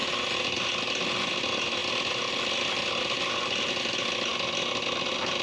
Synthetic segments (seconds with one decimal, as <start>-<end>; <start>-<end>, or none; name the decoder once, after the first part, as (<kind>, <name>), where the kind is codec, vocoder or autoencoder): none

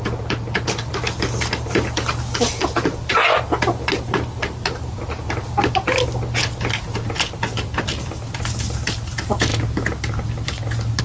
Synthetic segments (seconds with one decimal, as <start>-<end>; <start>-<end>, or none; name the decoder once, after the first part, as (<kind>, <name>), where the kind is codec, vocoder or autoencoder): none

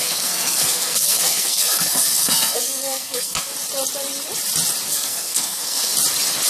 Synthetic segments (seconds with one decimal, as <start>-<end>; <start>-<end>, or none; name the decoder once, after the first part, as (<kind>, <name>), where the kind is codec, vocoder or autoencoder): 0.0-3.5 (codec, SNAC); 4.9-5.9

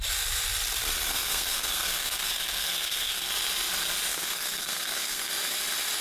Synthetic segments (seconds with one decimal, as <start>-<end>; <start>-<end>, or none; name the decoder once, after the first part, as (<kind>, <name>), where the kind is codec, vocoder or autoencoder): 1.1-3.3 (codec, SNAC); 4.1-5.3

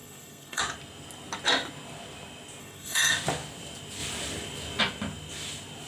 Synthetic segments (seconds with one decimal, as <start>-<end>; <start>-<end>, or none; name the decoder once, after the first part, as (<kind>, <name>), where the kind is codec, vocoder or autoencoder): 0.0-0.6 (codec, SNAC); 2.6-3.1